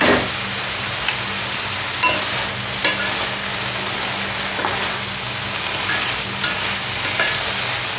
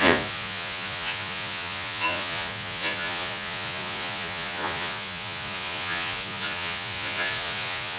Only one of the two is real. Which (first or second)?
first